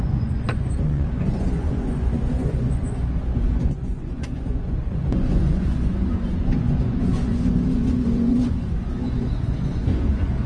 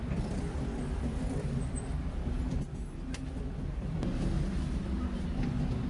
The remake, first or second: first